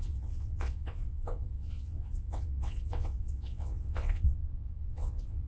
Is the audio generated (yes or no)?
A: yes